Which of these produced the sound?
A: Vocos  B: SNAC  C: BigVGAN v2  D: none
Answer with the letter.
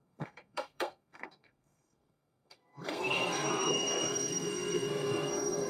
B